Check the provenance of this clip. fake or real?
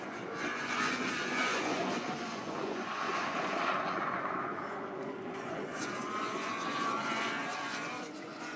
fake